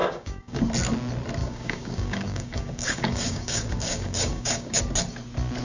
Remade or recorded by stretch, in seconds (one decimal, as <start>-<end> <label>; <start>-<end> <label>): 0.0-0.6 remade; 0.6-1.4 recorded; 1.4-4.8 remade; 4.8-5.6 recorded